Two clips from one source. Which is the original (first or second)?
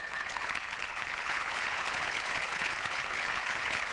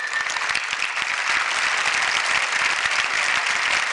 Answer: second